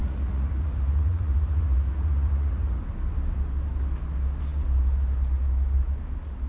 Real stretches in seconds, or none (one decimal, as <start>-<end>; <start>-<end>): 2.8-6.5